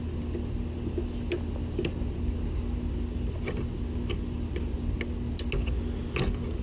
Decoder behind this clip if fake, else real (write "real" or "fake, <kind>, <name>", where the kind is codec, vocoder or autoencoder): real